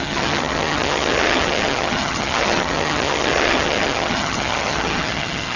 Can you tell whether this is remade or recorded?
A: remade